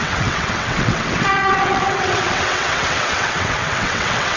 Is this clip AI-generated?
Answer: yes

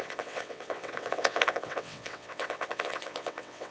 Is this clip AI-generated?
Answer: yes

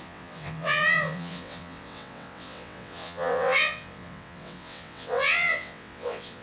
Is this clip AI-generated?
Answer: yes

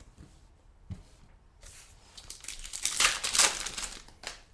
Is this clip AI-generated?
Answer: no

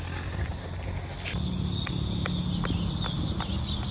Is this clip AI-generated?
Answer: no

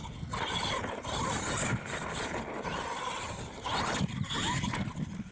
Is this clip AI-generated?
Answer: no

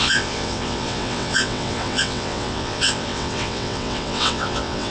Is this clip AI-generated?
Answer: yes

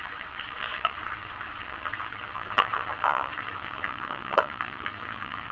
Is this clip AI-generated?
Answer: yes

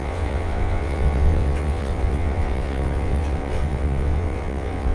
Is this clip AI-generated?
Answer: yes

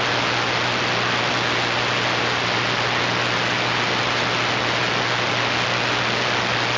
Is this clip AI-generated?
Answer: no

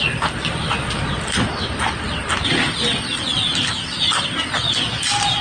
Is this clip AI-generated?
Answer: no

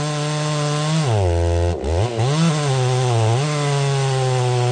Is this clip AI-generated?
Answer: no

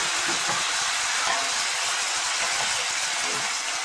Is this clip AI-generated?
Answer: no